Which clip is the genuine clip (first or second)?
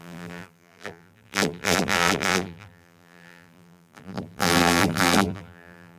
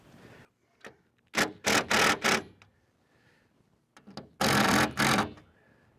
second